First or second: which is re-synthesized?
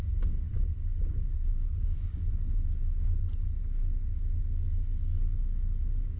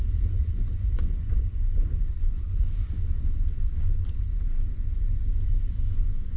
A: second